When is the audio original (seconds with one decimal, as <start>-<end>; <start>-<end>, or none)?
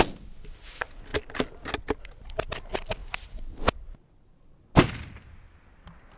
0.0-6.2